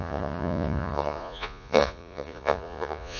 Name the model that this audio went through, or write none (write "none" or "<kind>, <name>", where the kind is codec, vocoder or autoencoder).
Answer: vocoder, Vocos